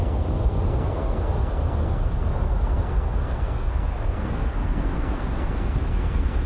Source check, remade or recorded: remade